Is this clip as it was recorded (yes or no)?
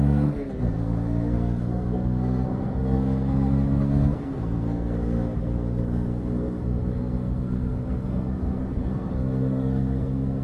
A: no